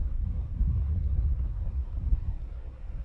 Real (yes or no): no